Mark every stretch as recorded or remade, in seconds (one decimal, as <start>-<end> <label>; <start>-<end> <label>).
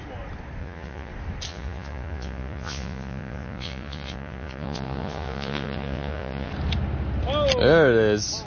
0.0-0.6 recorded; 0.6-1.1 remade; 1.1-1.5 recorded; 1.5-6.5 remade; 6.5-8.5 recorded